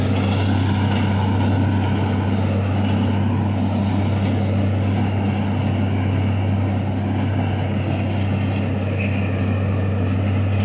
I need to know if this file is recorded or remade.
recorded